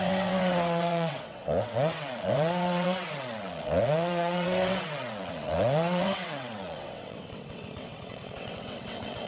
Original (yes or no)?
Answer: no